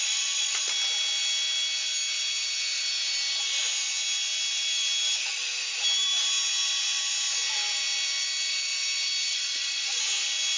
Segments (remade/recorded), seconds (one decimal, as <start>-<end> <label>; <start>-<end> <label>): 0.0-0.6 remade; 0.6-9.3 recorded; 9.3-10.0 remade; 10.0-10.6 recorded